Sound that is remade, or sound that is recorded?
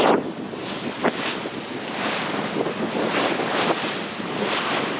recorded